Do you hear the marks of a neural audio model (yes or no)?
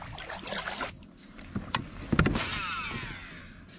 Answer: no